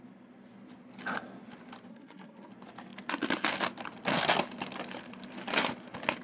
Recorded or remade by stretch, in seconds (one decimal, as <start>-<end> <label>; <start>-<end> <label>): 0.0-1.9 recorded; 1.9-2.5 remade; 2.5-6.2 recorded